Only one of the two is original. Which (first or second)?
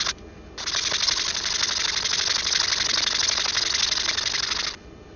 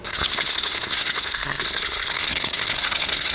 first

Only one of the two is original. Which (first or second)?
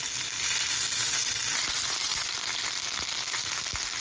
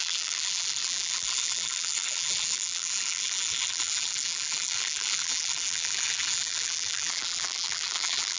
first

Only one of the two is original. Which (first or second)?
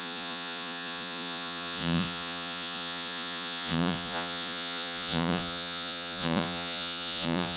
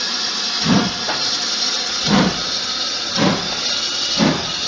second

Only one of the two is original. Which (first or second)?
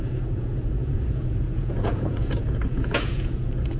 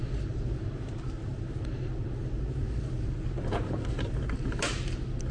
second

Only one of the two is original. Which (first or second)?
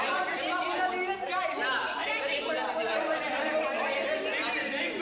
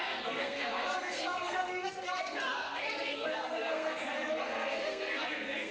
first